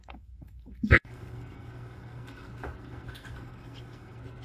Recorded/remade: remade